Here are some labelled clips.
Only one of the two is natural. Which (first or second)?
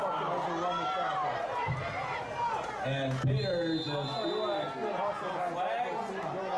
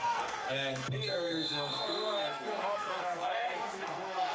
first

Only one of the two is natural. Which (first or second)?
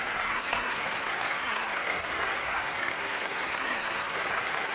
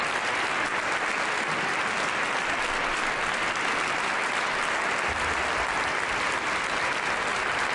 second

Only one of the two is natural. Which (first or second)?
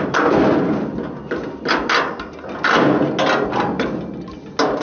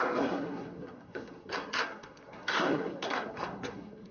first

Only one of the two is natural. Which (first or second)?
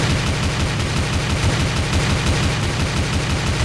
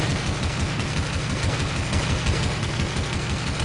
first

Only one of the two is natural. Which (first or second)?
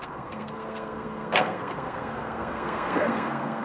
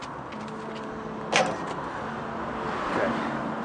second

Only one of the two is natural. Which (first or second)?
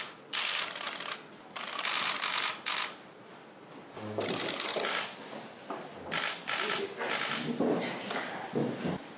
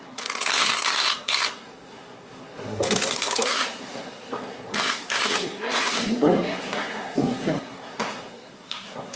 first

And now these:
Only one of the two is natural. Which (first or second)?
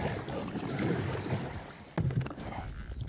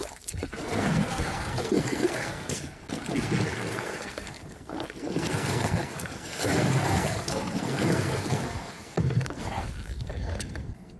first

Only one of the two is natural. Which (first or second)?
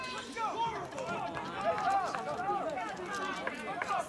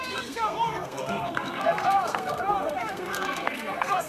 first